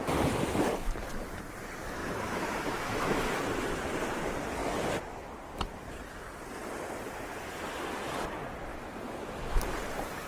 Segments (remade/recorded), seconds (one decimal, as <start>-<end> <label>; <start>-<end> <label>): 0.0-2.0 recorded; 2.0-3.2 remade; 3.2-8.7 recorded; 8.7-9.6 remade; 9.6-10.3 recorded